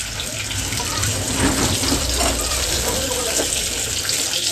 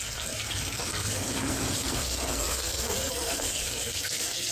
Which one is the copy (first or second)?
second